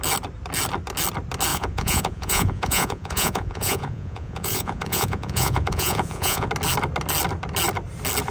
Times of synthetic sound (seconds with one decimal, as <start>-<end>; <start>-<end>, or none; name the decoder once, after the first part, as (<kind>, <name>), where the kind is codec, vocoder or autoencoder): 1.5-6.5 (vocoder, Vocos)

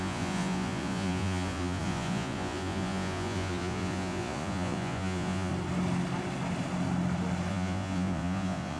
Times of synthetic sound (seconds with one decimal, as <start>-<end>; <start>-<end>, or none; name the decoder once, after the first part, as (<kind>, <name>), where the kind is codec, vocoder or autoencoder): 0.0-5.5 (vocoder, Vocos); 7.5-8.8

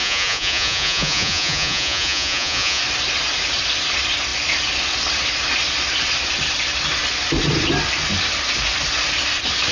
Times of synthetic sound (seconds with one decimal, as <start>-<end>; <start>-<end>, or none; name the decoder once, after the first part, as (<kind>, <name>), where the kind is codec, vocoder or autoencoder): 0.0-2.8 (vocoder, Vocos)

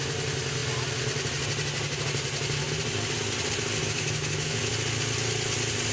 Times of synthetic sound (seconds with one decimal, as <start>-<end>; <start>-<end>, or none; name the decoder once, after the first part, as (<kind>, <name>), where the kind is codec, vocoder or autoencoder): 3.8-4.6 (autoencoder, DAC-VAE)

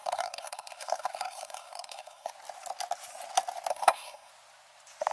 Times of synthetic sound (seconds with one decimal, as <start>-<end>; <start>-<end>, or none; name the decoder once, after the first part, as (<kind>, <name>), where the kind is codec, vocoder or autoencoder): 0.0-2.3 (codec, SNAC); 3.7-4.3

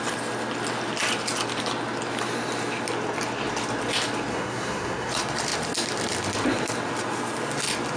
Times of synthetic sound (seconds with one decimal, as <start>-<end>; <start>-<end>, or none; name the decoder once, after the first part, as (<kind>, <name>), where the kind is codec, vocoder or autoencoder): 4.3-5.1 (codec, SNAC)

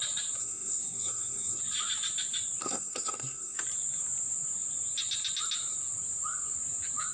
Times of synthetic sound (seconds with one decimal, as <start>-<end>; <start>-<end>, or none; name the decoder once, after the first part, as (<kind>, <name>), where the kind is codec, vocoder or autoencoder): 0.4-1.6 (codec, SNAC); 2.6-3.6